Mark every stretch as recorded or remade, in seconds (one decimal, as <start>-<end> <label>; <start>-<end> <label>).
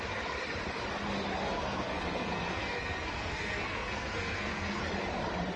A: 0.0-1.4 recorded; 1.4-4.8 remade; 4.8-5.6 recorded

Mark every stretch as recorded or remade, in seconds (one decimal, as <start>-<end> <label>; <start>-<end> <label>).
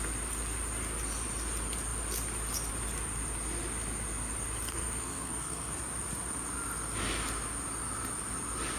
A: 0.0-4.7 recorded; 4.7-5.8 remade; 5.8-8.8 recorded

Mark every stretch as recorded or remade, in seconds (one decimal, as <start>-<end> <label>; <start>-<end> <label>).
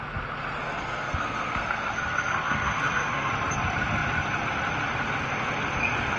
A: 0.0-0.6 recorded; 0.6-3.3 remade; 3.3-6.2 recorded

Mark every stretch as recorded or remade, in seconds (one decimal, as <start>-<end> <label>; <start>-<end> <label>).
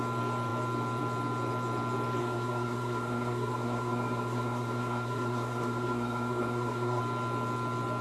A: 0.0-2.2 recorded; 2.2-7.0 remade; 7.0-8.0 recorded